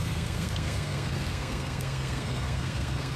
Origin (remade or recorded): remade